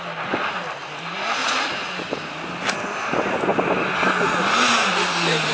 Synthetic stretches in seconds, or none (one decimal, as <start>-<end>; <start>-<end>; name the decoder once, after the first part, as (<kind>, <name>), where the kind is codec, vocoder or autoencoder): none